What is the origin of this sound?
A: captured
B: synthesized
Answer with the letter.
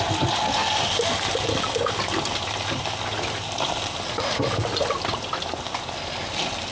A